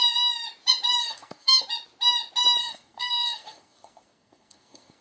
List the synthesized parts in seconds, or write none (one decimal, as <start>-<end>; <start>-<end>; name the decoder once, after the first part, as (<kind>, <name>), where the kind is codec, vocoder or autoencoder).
1.0-1.6 (codec, SNAC); 2.6-5.0